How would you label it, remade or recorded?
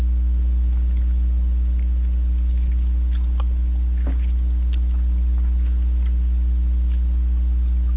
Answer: recorded